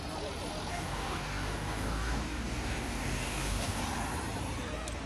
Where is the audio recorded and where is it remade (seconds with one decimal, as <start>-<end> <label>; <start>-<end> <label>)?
0.0-0.7 recorded; 0.7-3.8 remade; 3.8-5.1 recorded